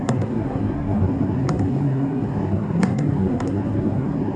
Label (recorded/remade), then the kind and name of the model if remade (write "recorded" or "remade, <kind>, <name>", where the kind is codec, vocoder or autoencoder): remade, codec, SNAC